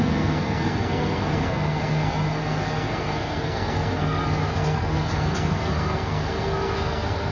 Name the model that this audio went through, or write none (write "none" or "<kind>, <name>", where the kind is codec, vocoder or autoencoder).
codec, SNAC